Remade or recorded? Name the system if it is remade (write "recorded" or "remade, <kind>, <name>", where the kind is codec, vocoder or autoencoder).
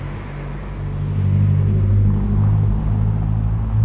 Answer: recorded